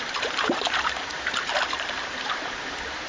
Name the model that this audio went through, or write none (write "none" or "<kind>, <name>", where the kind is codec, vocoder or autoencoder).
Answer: vocoder, BigVGAN v2